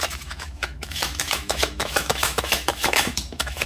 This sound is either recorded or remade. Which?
remade